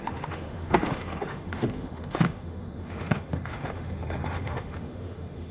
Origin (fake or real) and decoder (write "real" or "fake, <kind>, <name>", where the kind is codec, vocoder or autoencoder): fake, autoencoder, DAC-VAE